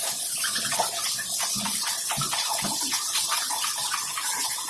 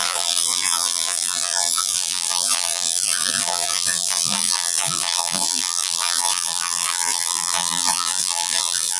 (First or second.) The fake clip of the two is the second